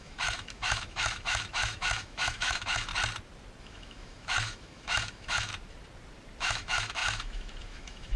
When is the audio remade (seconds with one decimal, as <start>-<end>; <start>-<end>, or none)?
0.0-2.9; 3.6-5.5; 6.4-8.2